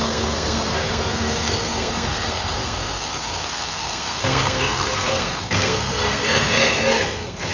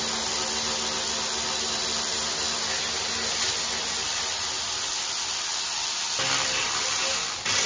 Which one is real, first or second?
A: second